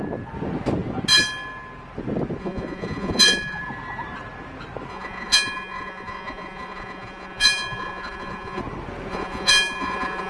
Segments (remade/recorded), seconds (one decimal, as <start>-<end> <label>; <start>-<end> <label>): 0.0-2.4 recorded; 2.4-3.6 remade; 3.6-4.9 recorded; 4.9-8.6 remade; 8.6-9.1 recorded; 9.1-10.3 remade